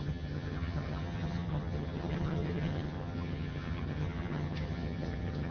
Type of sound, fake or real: fake